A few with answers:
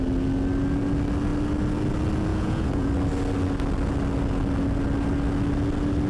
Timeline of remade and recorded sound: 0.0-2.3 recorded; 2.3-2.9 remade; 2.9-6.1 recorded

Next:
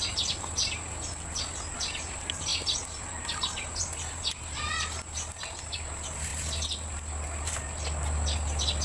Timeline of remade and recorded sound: 0.0-8.8 recorded

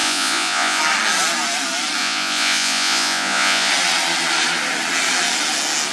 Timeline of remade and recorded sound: 0.0-0.8 remade; 0.8-2.0 recorded; 2.0-3.7 remade; 3.7-5.9 recorded

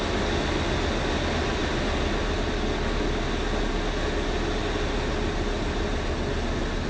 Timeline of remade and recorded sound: 0.0-6.9 recorded

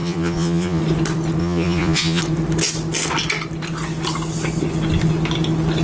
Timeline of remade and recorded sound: 0.0-0.8 remade; 0.8-1.4 recorded; 1.4-2.2 remade; 2.2-5.8 recorded